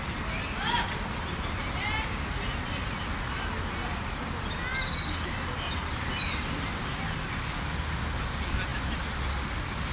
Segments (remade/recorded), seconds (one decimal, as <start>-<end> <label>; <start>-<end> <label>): 0.0-9.9 recorded